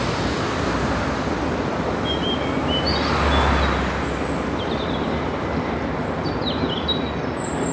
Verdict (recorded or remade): recorded